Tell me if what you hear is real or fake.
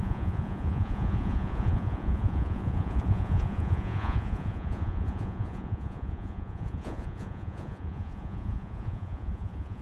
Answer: fake